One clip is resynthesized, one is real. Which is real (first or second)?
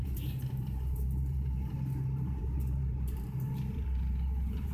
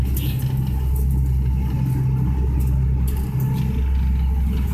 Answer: second